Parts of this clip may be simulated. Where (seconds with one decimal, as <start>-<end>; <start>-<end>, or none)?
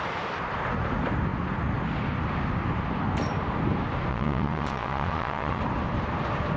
4.1-5.6